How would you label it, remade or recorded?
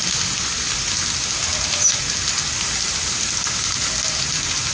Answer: recorded